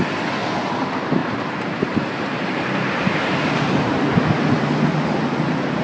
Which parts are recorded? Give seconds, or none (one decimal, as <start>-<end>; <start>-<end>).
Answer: 0.0-1.2; 4.7-5.8